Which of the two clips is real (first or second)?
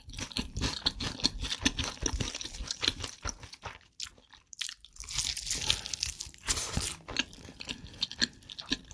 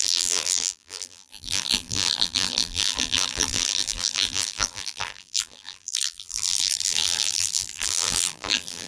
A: first